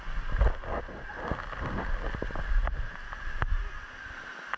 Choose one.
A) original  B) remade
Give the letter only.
A